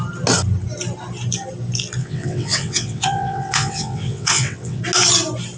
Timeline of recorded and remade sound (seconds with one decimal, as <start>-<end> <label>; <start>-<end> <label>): 0.0-2.0 recorded; 2.0-4.8 remade; 4.8-5.6 recorded

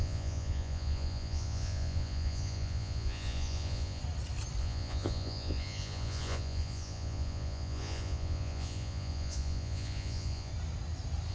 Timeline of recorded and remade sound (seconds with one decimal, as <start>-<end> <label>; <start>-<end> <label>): 0.0-4.0 remade; 4.0-4.6 recorded; 4.6-10.5 remade; 10.5-11.3 recorded